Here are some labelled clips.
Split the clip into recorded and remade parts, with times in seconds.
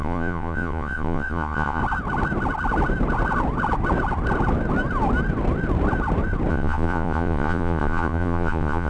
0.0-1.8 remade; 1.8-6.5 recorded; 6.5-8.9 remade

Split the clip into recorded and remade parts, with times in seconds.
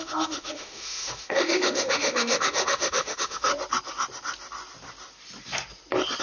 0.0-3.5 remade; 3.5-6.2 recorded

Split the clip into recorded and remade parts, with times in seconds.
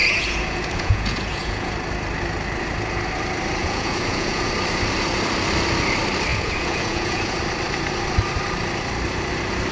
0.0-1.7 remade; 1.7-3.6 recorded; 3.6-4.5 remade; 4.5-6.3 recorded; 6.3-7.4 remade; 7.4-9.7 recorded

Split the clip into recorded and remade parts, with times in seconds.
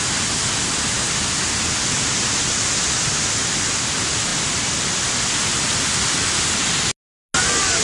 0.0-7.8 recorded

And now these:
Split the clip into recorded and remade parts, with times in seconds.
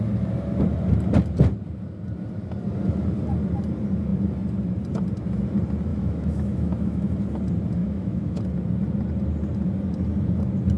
0.0-5.9 recorded; 5.9-7.1 remade; 7.1-7.8 recorded; 7.8-8.4 remade; 8.4-10.8 recorded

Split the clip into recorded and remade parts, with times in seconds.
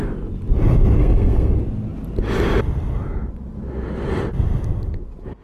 0.0-1.0 recorded; 1.0-1.5 remade; 1.5-5.4 recorded